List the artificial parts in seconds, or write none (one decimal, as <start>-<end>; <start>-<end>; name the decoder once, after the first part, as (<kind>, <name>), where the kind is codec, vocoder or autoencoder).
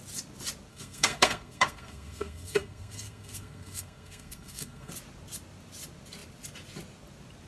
0.7-4.9 (codec, SNAC)